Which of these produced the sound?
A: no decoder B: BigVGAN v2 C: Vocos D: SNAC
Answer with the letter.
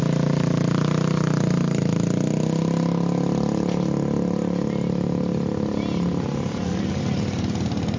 A